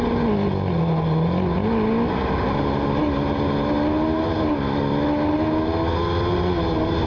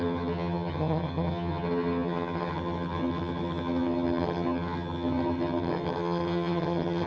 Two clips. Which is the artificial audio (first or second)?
second